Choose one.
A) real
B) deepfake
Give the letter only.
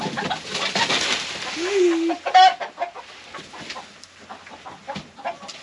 A